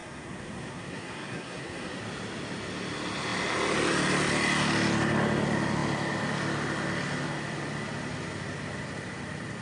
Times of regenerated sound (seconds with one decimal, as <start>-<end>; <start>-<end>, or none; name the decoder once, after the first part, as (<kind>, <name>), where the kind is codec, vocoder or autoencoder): 0.0-2.0 (codec, SNAC)